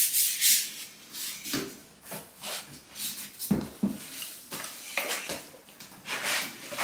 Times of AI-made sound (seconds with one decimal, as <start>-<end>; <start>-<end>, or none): 1.8-2.6